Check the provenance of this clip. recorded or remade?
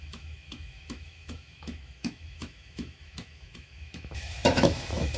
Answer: remade